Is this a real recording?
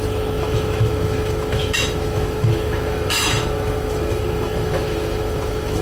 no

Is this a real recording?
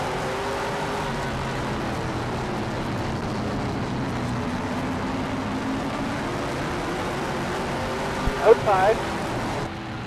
yes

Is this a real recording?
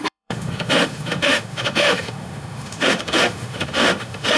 no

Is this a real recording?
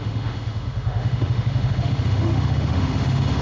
no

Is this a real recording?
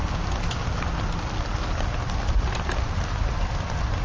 yes